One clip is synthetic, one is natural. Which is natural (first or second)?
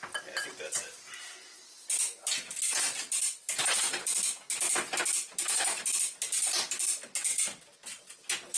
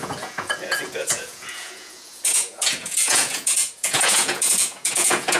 first